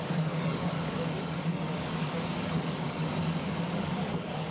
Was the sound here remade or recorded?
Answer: remade